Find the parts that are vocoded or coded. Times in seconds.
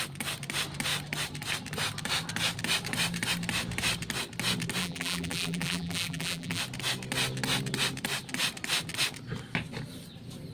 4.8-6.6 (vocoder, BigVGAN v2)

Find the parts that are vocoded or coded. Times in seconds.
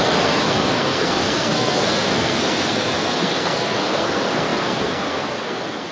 0.0-5.9 (codec, SNAC)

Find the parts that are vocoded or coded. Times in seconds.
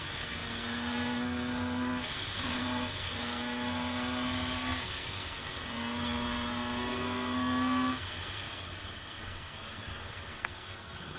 0.0-11.2 (codec, SNAC)